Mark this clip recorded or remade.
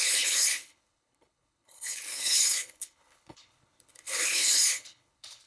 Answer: remade